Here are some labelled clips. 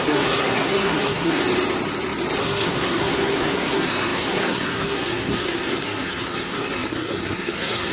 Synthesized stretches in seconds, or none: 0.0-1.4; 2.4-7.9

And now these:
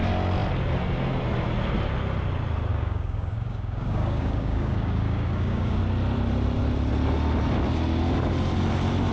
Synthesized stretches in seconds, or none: 2.7-5.8